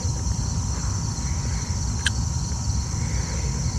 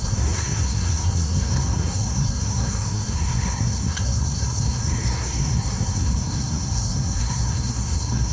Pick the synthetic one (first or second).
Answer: second